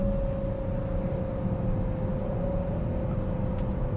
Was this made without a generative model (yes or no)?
yes